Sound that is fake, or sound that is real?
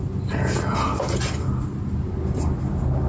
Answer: real